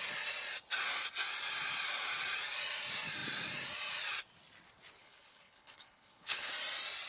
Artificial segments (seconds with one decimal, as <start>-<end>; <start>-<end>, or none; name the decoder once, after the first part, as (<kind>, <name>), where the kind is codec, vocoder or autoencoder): 5.0-6.5 (codec, HILCodec)

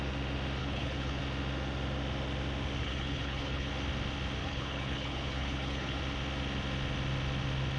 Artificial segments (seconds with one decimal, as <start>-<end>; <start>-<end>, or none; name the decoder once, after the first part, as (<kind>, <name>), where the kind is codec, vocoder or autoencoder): 0.6-1.2 (codec, HILCodec); 2.8-3.7; 4.4-6.0

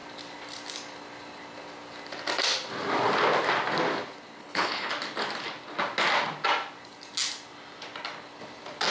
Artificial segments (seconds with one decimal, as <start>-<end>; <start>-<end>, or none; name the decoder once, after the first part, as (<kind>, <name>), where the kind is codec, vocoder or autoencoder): 4.4-4.9 (codec, HILCodec)

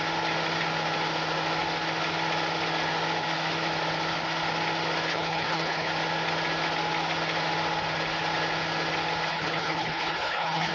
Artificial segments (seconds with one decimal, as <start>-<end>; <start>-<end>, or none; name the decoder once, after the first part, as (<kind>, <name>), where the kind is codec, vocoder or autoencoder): 5.1-5.9 (codec, HILCodec); 9.3-10.7

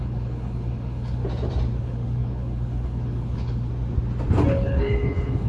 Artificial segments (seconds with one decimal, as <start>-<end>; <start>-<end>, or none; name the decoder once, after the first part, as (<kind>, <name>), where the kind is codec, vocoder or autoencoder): 0.0-1.2 (codec, HILCodec); 1.8-3.7; 4.5-5.5

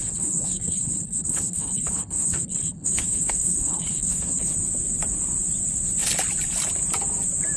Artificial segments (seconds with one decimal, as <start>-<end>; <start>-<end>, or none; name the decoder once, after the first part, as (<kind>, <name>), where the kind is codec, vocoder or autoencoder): 0.0-4.5 (codec, HILCodec)

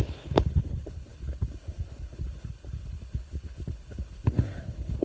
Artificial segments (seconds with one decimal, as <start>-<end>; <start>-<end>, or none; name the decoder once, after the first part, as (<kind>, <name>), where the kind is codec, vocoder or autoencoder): 0.0-5.0 (codec, HILCodec)